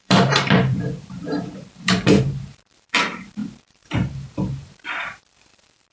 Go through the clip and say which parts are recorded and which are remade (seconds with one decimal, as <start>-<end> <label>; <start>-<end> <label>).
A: 0.0-5.9 remade

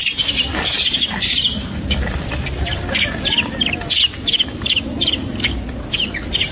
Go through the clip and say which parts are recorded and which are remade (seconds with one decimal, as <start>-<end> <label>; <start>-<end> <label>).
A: 0.0-6.5 recorded

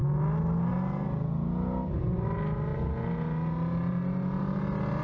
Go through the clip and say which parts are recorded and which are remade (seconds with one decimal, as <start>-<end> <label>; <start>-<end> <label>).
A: 0.0-5.0 recorded